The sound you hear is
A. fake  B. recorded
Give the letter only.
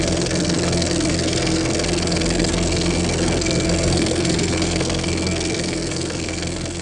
A